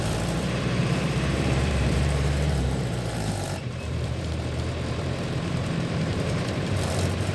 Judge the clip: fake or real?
fake